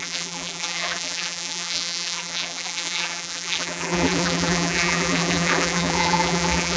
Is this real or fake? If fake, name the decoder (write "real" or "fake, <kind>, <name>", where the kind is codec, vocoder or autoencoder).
fake, vocoder, BigVGAN v2